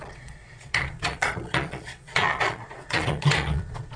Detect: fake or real fake